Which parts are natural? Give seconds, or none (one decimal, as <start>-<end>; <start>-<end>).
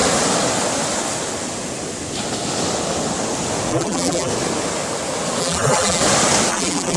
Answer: 0.0-3.7; 4.3-5.4; 6.0-6.5